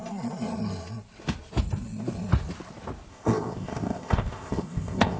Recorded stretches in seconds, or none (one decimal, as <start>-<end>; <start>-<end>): 0.0-3.1